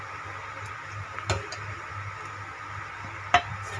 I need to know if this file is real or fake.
real